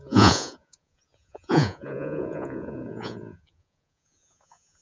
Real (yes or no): no